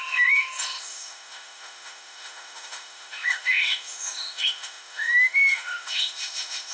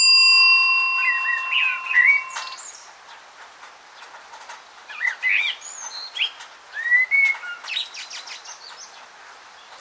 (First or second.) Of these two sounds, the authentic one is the second